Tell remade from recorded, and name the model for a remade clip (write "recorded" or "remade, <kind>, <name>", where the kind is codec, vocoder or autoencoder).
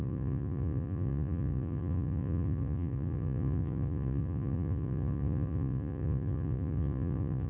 remade, vocoder, Vocos